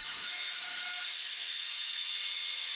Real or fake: fake